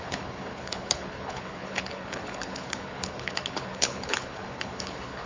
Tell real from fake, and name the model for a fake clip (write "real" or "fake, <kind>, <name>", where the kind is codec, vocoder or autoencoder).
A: fake, codec, HILCodec